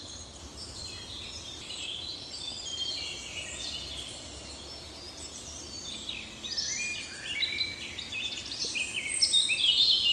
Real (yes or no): yes